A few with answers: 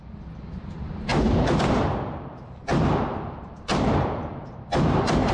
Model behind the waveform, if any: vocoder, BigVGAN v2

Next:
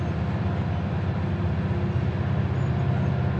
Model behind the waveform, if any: none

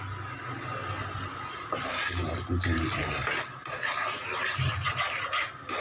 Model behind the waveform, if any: none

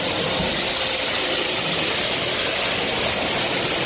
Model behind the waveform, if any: none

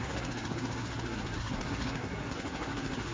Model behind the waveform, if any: codec, SNAC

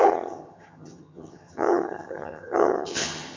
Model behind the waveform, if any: vocoder, HiFi-GAN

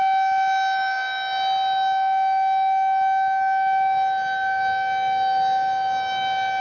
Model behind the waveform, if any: none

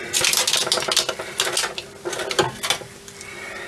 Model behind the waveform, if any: none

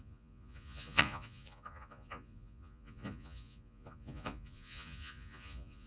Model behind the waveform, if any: vocoder, Vocos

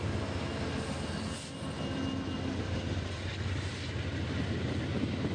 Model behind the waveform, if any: none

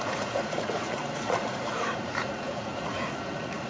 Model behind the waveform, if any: vocoder, Vocos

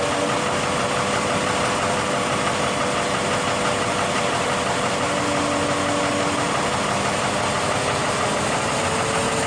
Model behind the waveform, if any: none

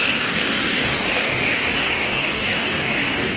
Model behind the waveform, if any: codec, DAC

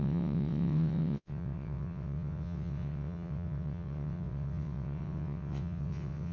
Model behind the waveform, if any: vocoder, WaveNeXt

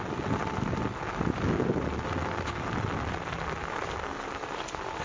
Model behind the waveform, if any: none